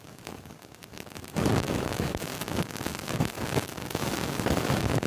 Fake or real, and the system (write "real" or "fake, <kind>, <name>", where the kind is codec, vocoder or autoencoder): fake, codec, DAC